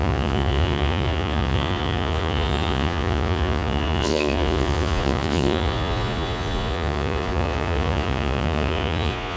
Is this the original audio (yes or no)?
no